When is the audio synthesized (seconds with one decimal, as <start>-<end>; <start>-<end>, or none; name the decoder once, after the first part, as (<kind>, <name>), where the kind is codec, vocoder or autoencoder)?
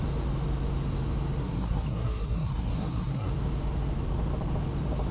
1.4-3.3 (codec, SNAC)